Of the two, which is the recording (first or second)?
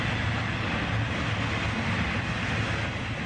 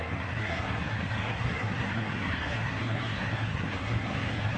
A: first